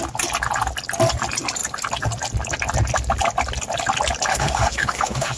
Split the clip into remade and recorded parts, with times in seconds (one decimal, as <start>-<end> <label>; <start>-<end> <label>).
0.0-4.3 recorded; 4.3-5.4 remade